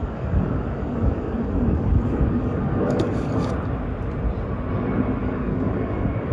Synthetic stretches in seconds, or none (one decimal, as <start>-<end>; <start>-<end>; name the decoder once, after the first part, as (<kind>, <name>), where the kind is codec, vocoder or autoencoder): 0.0-3.5 (codec, DAC); 5.2-6.3